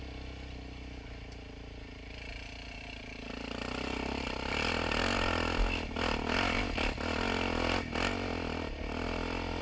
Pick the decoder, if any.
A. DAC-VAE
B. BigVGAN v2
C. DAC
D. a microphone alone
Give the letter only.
D